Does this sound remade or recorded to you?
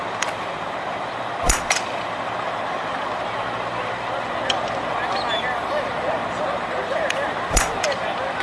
remade